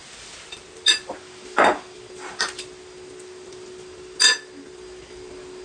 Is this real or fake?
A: real